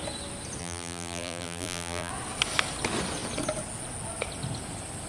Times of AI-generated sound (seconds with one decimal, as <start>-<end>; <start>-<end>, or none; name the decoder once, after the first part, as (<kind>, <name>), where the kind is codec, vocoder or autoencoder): 0.6-2.1 (vocoder, BigVGAN v2)